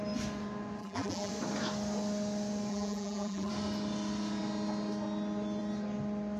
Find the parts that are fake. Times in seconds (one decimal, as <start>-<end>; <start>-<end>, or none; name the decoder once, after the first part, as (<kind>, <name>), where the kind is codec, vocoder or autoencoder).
0.8-1.3 (vocoder, BigVGAN v2); 2.7-3.5